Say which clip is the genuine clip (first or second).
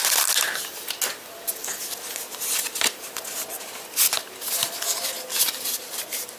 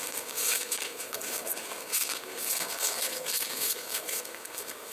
first